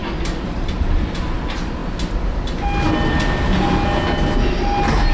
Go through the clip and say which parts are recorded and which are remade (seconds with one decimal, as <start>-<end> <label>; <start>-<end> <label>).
0.0-0.5 recorded; 0.5-1.8 remade; 1.8-5.1 recorded

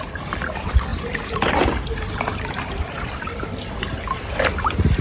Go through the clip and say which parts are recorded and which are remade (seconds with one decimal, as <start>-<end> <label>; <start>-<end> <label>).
0.0-0.9 recorded; 0.9-3.8 remade; 3.8-5.0 recorded